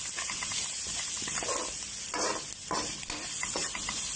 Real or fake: real